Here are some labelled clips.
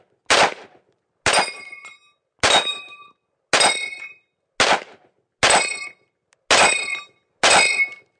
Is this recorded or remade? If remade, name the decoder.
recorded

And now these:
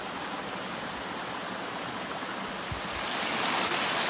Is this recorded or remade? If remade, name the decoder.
recorded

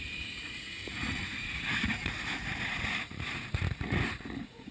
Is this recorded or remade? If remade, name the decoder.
remade, vocoder, Vocos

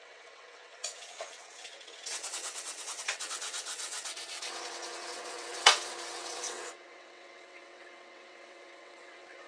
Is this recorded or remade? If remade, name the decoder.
remade, vocoder, WaveNeXt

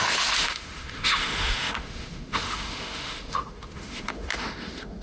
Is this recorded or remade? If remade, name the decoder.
remade, autoencoder, DAC-VAE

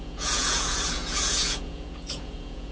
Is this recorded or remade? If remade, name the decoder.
remade, vocoder, Vocos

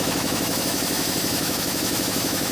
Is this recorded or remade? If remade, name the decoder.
remade, autoencoder, DAC-VAE